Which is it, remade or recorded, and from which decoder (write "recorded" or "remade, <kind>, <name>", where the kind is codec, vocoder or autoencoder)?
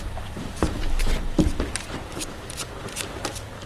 remade, vocoder, BigVGAN v2